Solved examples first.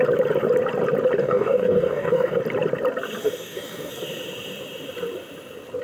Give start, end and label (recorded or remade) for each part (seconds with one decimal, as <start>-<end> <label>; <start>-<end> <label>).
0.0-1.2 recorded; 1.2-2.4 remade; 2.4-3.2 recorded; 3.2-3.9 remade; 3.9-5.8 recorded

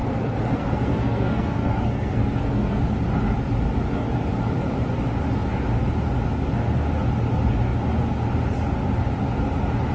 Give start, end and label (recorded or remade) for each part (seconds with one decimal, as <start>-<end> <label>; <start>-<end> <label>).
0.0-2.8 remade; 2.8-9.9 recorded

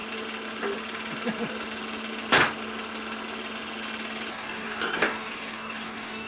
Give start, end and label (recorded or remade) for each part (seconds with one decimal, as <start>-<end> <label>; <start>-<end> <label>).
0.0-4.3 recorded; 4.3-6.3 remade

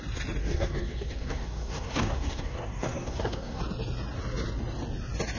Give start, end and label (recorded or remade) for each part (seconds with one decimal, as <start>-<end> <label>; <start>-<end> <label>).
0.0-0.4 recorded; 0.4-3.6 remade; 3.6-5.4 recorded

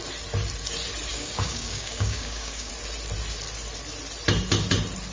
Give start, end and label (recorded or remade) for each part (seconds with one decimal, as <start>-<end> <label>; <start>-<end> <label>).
0.0-1.1 recorded; 1.1-2.7 remade; 2.7-5.1 recorded

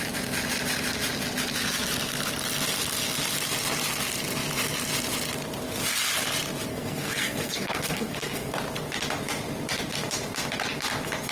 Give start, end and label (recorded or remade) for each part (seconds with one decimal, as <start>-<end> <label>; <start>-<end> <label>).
0.0-6.7 recorded; 6.7-8.5 remade; 8.5-11.3 recorded